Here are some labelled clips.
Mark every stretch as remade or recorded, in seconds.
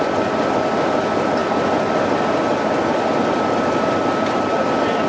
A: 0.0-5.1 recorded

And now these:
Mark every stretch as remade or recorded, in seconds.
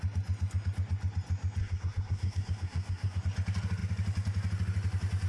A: 0.0-1.6 recorded; 1.6-3.2 remade; 3.2-5.3 recorded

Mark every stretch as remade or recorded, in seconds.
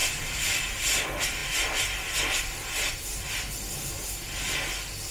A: 0.0-0.8 remade; 0.8-5.1 recorded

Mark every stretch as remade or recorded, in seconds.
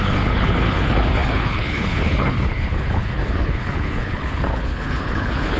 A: 0.0-5.6 remade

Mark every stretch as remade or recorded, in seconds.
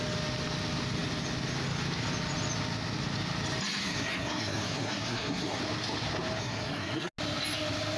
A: 0.0-3.8 recorded; 3.8-5.6 remade; 5.6-6.4 recorded; 6.4-7.1 remade; 7.1-8.0 recorded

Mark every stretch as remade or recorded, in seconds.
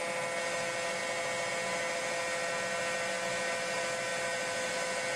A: 0.0-5.2 recorded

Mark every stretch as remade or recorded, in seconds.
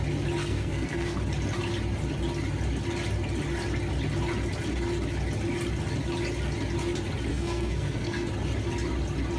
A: 0.0-0.4 recorded; 0.4-1.2 remade; 1.2-7.3 recorded; 7.3-8.3 remade; 8.3-9.4 recorded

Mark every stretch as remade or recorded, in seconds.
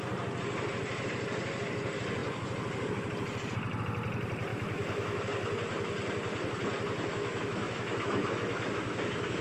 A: 0.0-4.5 recorded; 4.5-5.2 remade; 5.2-7.1 recorded; 7.1-9.4 remade